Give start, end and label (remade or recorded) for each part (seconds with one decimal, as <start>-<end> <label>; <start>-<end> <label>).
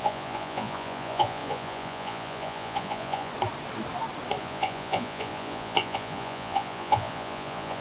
0.0-3.3 remade; 3.3-4.4 recorded; 4.4-7.8 remade